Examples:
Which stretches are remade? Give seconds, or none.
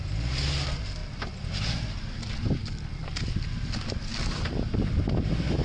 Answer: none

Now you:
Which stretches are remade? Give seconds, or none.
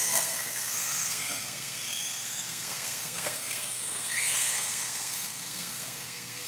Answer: 0.0-6.5 (codec, SNAC)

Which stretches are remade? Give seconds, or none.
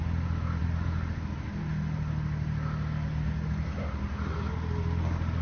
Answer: none